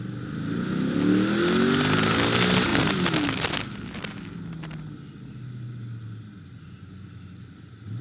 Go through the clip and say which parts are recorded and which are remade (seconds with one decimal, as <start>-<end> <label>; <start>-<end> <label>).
0.0-8.0 recorded